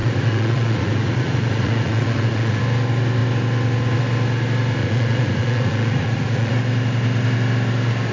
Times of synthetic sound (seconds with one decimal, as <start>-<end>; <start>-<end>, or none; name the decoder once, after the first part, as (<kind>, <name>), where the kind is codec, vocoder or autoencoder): 0.0-2.6 (vocoder, Vocos); 4.8-6.5